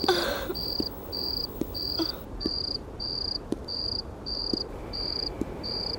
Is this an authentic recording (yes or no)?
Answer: no